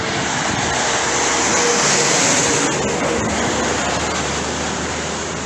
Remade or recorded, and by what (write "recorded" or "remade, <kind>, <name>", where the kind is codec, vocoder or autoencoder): recorded